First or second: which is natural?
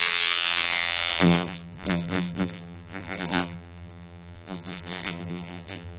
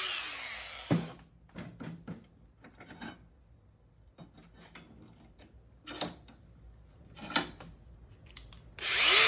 second